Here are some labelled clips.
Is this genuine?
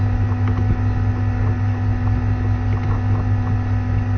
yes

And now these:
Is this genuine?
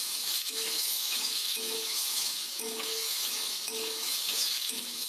no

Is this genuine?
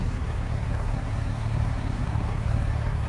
no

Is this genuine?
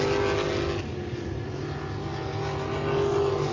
yes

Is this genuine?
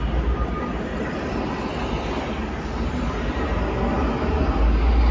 yes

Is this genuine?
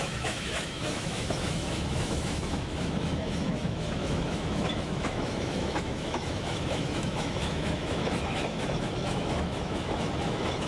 no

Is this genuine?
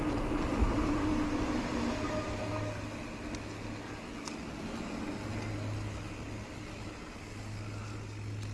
yes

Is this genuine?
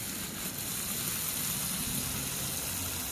yes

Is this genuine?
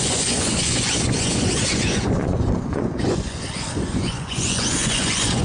no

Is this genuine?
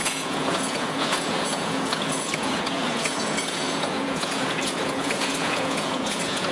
no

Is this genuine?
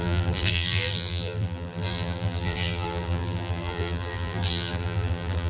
no